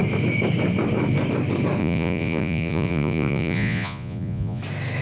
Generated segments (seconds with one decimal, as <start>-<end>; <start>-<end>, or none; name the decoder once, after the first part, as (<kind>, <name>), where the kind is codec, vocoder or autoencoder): 1.8-4.6 (vocoder, Vocos)